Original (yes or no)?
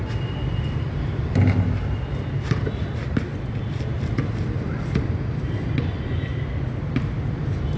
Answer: yes